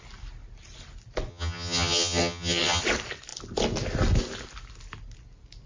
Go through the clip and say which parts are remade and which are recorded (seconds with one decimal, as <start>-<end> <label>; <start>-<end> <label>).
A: 0.0-1.3 recorded; 1.3-2.8 remade; 2.8-5.7 recorded